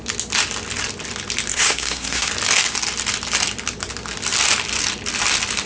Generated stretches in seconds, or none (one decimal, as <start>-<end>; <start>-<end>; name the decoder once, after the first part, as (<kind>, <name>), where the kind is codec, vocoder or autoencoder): 1.5-2.3 (codec, SNAC)